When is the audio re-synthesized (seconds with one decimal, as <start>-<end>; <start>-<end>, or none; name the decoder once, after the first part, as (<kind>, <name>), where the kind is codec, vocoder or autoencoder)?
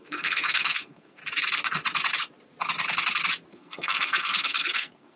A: 0.0-1.2 (codec, SNAC); 3.5-5.2